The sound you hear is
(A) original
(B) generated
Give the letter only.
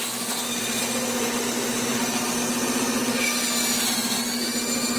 A